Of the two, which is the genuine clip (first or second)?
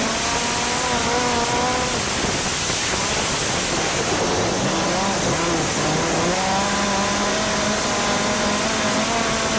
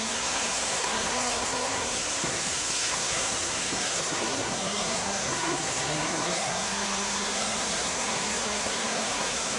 first